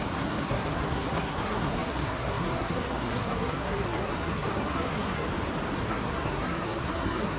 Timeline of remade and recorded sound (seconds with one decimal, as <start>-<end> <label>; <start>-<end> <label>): 0.0-5.3 remade; 5.3-5.9 recorded; 5.9-7.4 remade